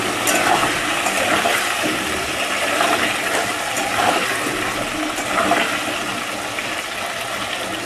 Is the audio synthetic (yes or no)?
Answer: no